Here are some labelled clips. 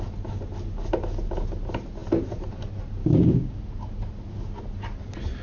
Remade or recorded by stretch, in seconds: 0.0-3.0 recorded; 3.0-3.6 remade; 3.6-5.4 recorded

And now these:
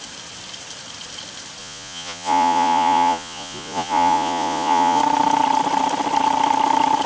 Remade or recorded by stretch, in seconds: 0.0-1.6 recorded; 1.6-5.0 remade; 5.0-7.1 recorded

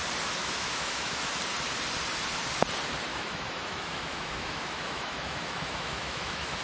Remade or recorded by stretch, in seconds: 0.0-0.4 recorded; 0.4-1.3 remade; 1.3-3.1 recorded; 3.1-6.6 remade

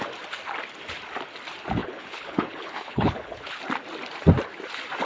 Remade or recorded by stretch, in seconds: 0.0-1.8 recorded; 1.8-3.6 remade; 3.6-5.1 recorded

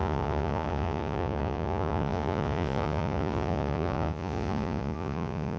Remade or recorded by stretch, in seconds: 0.0-5.6 remade